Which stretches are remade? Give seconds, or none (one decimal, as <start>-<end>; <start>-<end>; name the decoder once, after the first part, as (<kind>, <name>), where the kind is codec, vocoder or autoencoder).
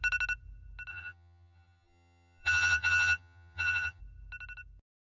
0.9-4.0 (vocoder, HiFi-GAN)